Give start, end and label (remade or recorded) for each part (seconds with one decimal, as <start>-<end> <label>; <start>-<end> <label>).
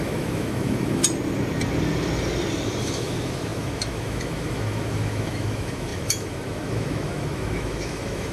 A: 0.0-1.0 remade; 1.0-2.8 recorded; 2.8-8.3 remade